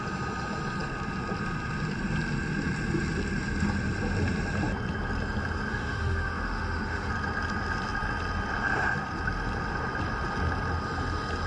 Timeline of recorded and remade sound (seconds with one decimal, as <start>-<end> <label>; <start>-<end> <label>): 0.0-5.7 recorded; 5.7-7.1 remade; 7.1-11.5 recorded